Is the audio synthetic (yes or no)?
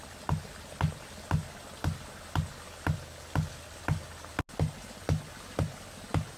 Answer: no